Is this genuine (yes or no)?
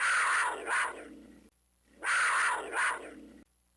yes